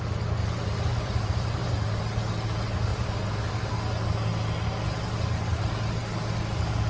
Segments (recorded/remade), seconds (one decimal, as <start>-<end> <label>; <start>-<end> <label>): 0.0-0.4 recorded; 0.4-2.0 remade; 2.0-2.9 recorded; 2.9-3.7 remade; 3.7-6.9 recorded